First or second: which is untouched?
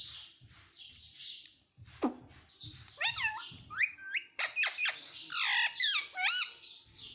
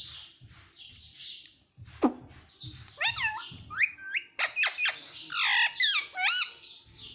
second